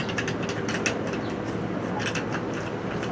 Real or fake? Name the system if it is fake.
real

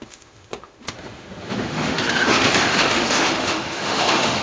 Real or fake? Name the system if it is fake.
fake, autoencoder, DAC-VAE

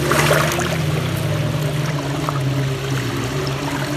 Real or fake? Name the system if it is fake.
real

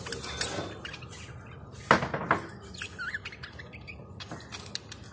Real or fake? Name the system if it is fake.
real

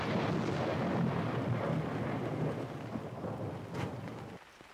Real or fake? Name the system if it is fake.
real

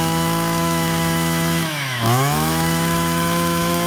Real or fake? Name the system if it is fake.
fake, autoencoder, DAC-VAE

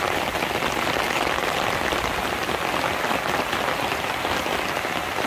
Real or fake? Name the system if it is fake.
real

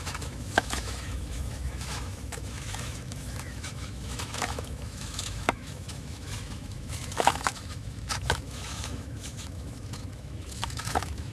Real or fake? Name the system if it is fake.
fake, autoencoder, DAC-VAE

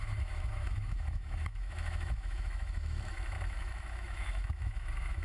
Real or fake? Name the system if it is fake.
fake, autoencoder, DAC-VAE